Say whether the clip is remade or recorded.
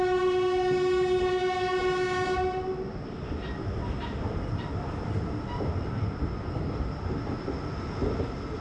recorded